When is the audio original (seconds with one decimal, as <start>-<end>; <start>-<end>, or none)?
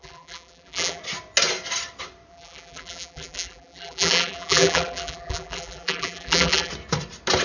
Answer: 1.0-2.3; 6.7-7.4